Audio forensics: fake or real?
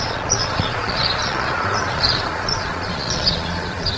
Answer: fake